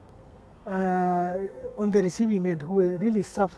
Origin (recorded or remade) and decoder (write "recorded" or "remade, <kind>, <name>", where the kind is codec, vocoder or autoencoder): remade, codec, SNAC